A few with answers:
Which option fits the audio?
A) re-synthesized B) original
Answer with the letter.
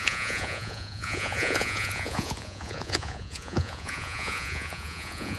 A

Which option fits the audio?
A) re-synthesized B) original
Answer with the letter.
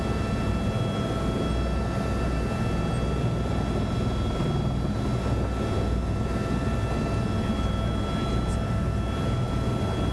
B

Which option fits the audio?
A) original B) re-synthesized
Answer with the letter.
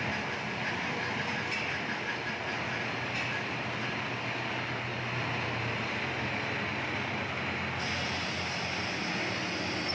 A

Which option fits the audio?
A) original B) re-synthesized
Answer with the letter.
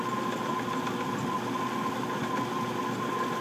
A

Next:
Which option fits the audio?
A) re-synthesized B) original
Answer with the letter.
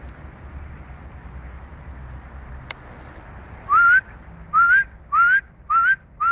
B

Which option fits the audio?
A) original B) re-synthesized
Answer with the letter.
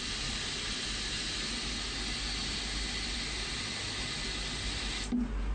A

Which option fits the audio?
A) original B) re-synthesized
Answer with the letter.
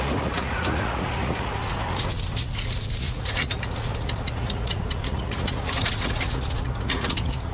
B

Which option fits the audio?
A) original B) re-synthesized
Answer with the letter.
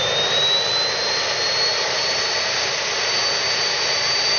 A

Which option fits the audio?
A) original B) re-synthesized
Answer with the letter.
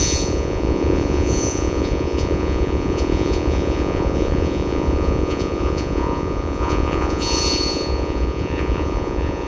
B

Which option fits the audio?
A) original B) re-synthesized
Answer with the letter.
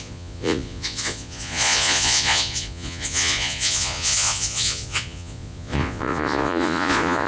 B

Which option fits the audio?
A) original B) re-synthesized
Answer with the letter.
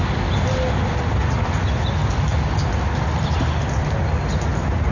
A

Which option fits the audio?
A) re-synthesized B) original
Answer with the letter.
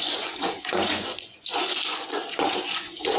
A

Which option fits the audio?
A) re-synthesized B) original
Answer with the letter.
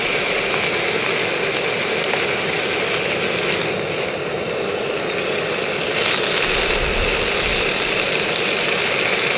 B